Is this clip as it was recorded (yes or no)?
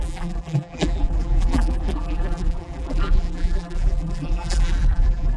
no